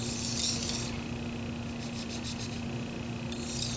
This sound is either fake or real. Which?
real